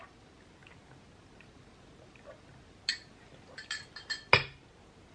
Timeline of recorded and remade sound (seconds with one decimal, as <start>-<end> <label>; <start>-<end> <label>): 0.0-5.1 recorded